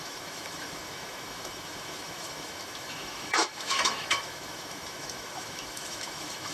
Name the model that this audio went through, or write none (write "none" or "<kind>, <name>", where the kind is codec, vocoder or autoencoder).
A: autoencoder, DAC-VAE